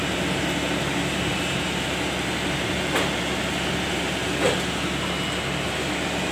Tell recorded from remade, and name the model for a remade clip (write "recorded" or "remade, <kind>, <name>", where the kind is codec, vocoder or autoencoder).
recorded